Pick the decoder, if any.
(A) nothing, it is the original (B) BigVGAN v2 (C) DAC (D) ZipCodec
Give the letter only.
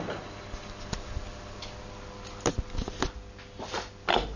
A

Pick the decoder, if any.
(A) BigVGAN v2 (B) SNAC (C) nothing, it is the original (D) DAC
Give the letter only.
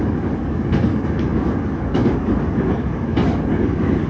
D